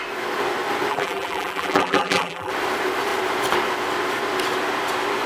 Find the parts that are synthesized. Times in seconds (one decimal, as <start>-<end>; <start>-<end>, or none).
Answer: 0.9-2.5